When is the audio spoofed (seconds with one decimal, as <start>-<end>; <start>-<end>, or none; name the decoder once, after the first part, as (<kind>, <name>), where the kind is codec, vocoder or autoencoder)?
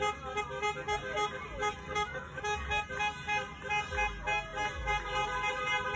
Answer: 1.8-2.4 (codec, SNAC)